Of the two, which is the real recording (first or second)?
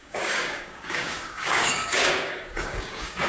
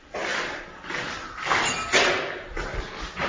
second